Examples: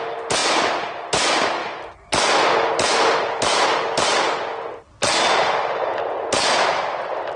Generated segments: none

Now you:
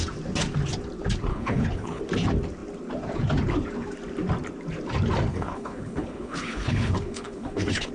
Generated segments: 1.3-2.0 (codec, HILCodec); 5.3-7.9

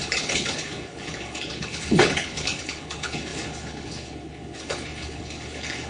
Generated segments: 0.0-5.9 (codec, HILCodec)

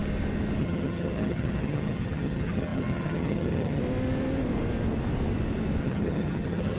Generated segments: 0.6-3.8 (vocoder, HiFi-GAN); 5.8-6.8

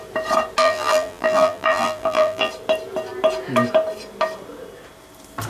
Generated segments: 0.6-2.5 (vocoder, BigVGAN v2)

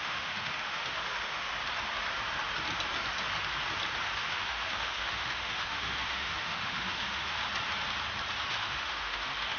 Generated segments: 0.0-1.5 (autoencoder, DAC-VAE); 4.0-7.4; 8.5-9.6

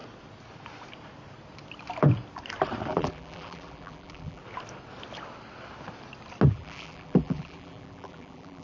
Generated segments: 2.9-4.4 (vocoder, BigVGAN v2); 6.5-8.6

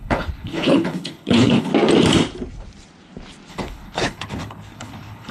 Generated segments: 0.0-1.7 (codec, HILCodec); 3.5-5.3